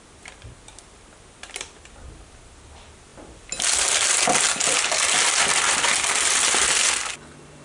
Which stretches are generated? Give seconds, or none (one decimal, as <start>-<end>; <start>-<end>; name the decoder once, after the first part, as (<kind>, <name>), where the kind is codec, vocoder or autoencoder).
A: none